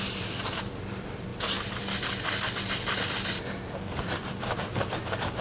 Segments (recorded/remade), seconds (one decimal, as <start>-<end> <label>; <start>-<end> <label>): 0.0-1.3 remade; 1.3-3.9 recorded; 3.9-5.4 remade